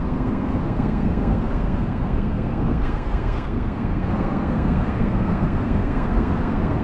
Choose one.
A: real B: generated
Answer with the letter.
B